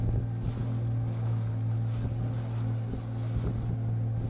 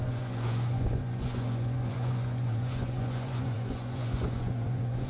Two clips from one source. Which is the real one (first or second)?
first